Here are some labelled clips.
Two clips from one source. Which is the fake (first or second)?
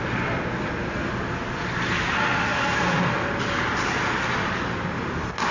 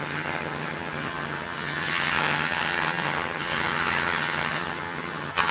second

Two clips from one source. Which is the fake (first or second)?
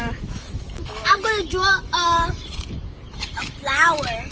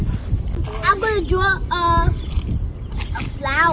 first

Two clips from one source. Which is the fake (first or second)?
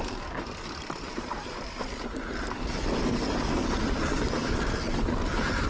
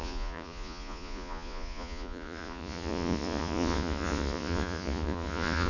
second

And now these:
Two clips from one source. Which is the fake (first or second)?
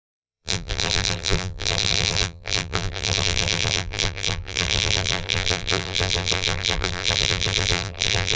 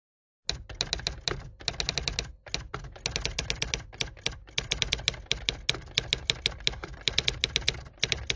first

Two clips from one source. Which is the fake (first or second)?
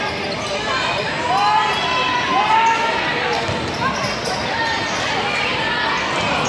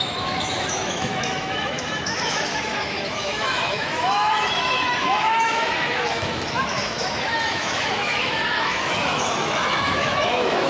second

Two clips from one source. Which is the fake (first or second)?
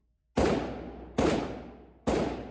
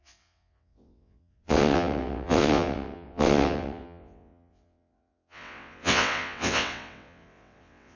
second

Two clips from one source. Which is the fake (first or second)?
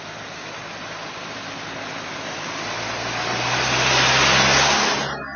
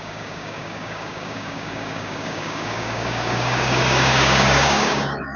second